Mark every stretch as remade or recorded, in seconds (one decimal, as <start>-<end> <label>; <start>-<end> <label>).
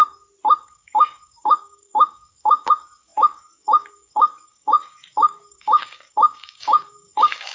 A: 0.0-0.6 recorded; 0.6-7.5 remade